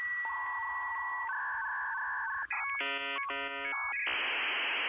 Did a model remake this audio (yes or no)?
no